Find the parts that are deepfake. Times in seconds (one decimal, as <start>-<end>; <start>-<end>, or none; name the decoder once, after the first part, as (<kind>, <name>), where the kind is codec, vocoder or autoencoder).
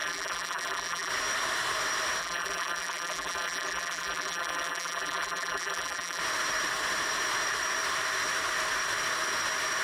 0.0-1.1 (vocoder, BigVGAN v2); 2.2-6.2